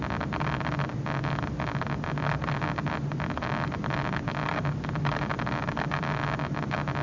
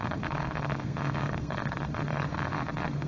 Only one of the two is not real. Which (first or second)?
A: second